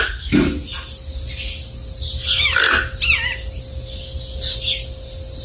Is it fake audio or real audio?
real